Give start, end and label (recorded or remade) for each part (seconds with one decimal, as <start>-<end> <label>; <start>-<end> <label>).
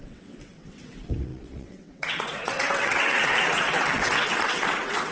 0.0-5.1 remade